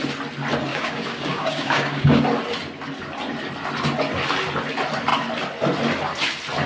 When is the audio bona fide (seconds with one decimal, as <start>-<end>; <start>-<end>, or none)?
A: 0.0-0.7; 2.2-6.7